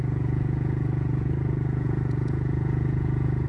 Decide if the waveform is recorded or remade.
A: remade